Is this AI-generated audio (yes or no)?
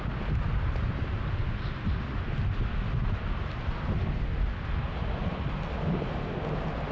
no